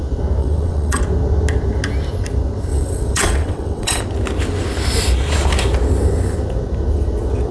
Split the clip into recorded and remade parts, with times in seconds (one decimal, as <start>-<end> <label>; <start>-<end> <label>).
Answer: 0.0-0.4 recorded; 0.4-1.0 remade; 1.0-2.7 recorded; 2.7-4.0 remade; 4.0-7.5 recorded